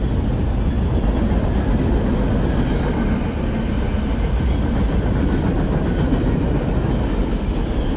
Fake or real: real